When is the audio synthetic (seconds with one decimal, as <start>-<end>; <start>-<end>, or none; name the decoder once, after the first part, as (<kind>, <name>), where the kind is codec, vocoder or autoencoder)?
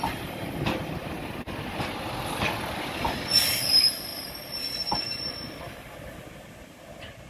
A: none